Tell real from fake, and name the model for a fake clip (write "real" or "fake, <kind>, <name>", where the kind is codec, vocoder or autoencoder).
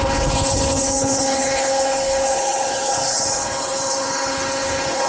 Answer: fake, codec, HILCodec